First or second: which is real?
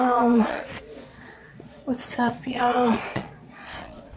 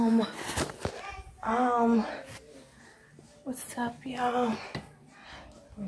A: second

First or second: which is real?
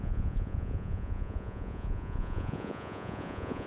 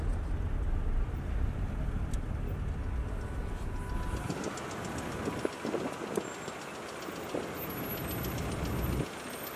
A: second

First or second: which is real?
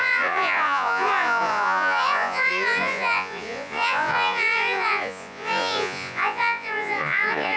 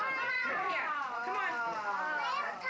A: second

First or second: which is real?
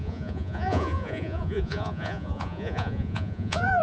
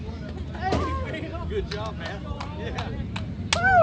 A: second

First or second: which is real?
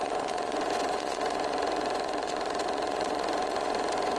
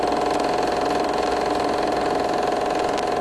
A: second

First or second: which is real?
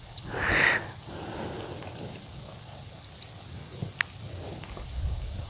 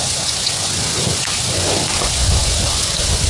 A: first